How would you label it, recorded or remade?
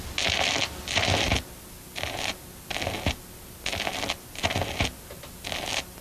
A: recorded